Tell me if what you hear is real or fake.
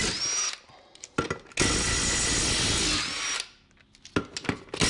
real